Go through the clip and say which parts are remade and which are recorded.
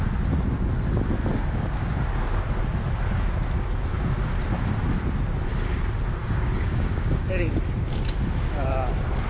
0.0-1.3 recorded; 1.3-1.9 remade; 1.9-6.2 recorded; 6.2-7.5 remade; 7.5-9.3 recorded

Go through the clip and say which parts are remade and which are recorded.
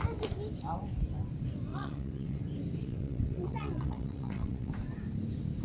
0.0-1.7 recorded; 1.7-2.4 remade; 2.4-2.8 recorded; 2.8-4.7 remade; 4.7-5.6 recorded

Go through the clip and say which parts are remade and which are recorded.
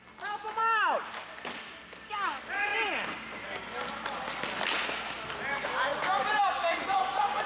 0.0-7.5 recorded